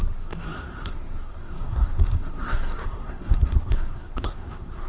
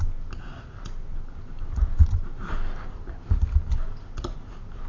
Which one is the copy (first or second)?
first